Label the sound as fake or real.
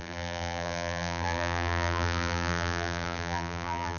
fake